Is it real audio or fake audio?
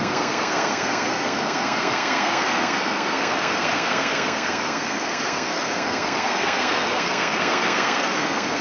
fake